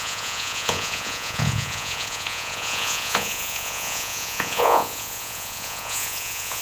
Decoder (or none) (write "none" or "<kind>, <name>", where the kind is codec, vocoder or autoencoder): vocoder, Vocos